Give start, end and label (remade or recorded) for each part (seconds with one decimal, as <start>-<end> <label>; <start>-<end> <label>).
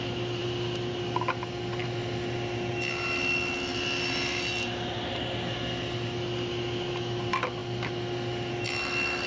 0.0-9.3 recorded